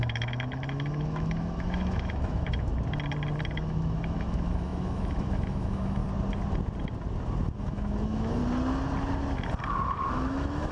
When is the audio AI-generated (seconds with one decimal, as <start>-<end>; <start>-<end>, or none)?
0.0-2.7; 3.5-6.0; 7.6-8.4; 10.1-10.7